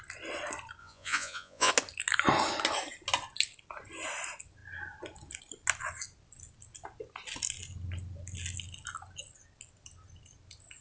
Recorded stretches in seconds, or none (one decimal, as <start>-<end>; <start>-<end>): 0.0-0.8; 1.7-10.8